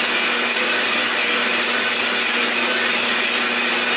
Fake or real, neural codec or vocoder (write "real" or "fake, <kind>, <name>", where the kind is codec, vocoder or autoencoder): real